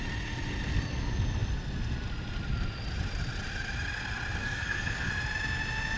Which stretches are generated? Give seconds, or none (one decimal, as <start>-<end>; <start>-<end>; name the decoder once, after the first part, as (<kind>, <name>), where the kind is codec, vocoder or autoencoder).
4.4-5.1 (codec, SNAC)